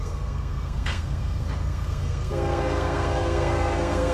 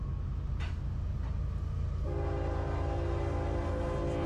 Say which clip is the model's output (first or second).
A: first